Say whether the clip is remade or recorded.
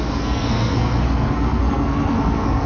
remade